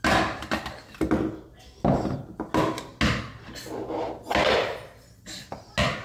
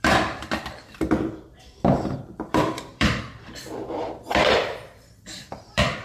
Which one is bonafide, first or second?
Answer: first